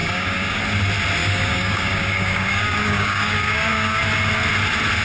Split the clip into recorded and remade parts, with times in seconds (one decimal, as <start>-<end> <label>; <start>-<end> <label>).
0.0-0.6 remade; 0.6-1.2 recorded; 1.2-4.0 remade; 4.0-5.0 recorded